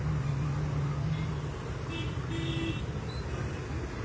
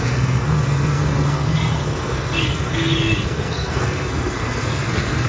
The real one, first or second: first